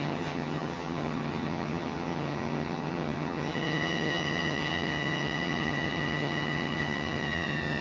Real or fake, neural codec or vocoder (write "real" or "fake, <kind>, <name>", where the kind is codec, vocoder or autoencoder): fake, vocoder, HiFi-GAN